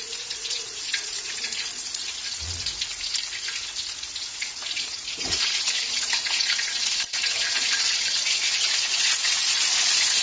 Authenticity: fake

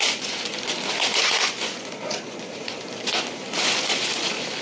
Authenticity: fake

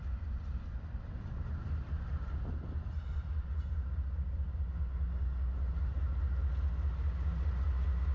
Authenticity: real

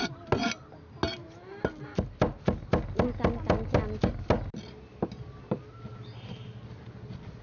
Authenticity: real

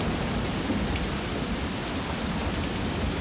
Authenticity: real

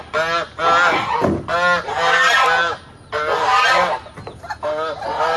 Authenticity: real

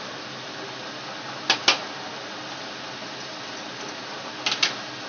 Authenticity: real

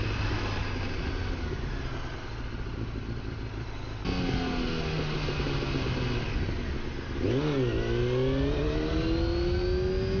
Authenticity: real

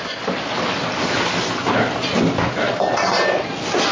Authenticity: real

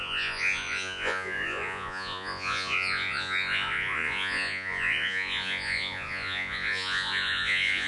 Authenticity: fake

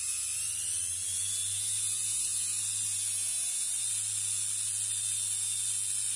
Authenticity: real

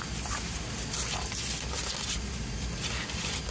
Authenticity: real